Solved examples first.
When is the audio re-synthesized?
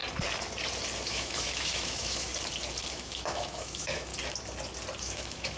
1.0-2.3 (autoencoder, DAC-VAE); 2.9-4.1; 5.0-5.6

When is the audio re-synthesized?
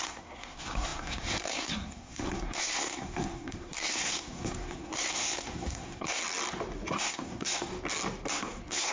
0.0-6.2 (codec, SNAC); 6.9-7.7; 8.3-8.9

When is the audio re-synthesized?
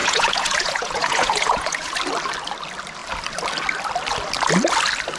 0.0-2.0 (vocoder, Vocos)